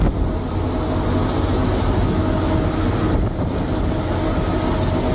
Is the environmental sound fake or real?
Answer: real